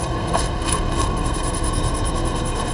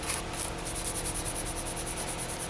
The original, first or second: second